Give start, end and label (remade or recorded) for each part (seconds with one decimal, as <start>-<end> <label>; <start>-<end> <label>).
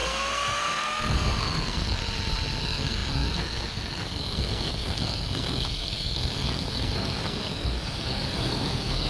0.0-2.0 remade; 2.0-2.6 recorded; 2.6-9.1 remade